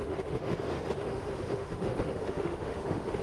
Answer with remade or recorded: remade